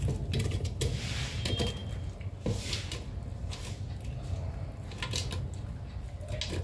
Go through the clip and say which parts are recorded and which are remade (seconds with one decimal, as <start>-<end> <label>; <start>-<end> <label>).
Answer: 0.0-6.6 recorded